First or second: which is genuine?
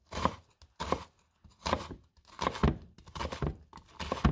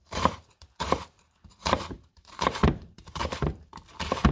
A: first